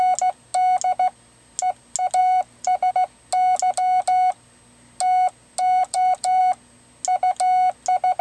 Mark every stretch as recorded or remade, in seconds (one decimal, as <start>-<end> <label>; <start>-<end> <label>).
0.0-2.2 recorded; 2.2-2.9 remade; 2.9-5.8 recorded; 5.8-6.4 remade; 6.4-8.2 recorded